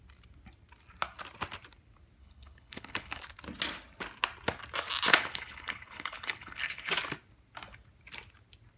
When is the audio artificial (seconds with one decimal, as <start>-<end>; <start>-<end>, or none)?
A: 2.2-3.2; 5.1-6.9